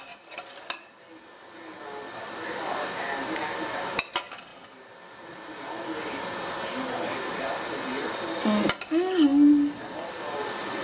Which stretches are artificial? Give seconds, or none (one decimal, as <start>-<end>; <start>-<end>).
none